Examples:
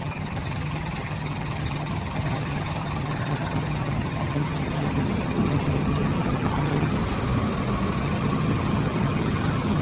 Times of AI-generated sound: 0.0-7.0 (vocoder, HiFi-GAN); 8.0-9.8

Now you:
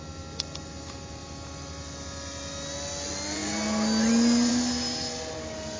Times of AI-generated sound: none

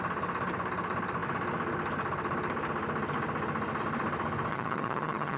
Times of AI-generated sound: 4.5-5.4 (vocoder, HiFi-GAN)

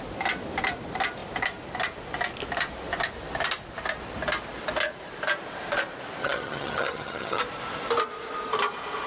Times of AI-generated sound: 6.2-7.4 (vocoder, HiFi-GAN)

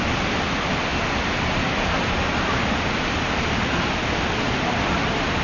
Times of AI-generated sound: none

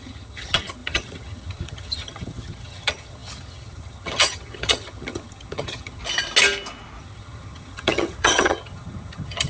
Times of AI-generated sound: 0.0-6.0 (vocoder, HiFi-GAN); 7.0-9.5

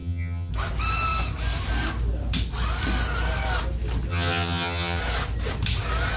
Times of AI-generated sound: 0.0-0.5 (vocoder, HiFi-GAN); 4.1-5.0

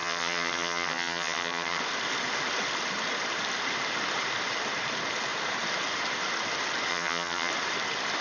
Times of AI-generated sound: 0.0-1.8 (vocoder, HiFi-GAN); 6.9-7.5